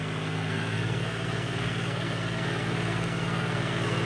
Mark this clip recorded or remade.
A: remade